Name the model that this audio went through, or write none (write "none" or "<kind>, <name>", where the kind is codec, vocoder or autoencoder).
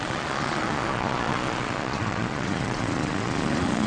vocoder, Vocos